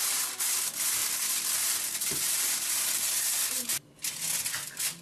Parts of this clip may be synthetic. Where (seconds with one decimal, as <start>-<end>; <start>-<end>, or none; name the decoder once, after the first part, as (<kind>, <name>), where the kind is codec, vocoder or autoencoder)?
none